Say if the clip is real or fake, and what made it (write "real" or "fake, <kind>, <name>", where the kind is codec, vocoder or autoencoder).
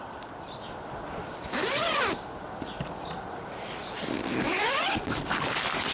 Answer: real